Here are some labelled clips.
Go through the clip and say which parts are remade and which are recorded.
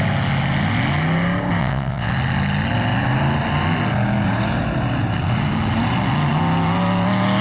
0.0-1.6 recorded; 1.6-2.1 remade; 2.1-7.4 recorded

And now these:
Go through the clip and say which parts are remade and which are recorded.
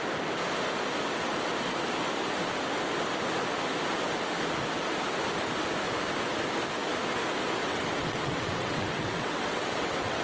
0.0-7.6 recorded; 7.6-10.2 remade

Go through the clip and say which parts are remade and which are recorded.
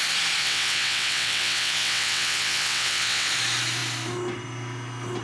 0.0-0.4 recorded; 0.4-3.3 remade; 3.3-5.2 recorded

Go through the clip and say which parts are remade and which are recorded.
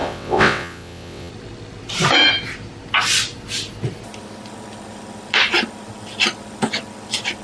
0.0-1.3 remade; 1.3-7.4 recorded